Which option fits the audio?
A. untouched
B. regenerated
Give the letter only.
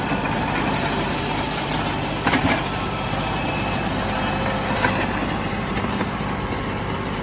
B